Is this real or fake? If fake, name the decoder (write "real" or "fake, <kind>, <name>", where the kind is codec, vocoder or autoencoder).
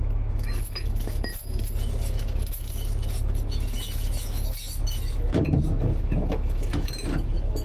fake, autoencoder, DAC-VAE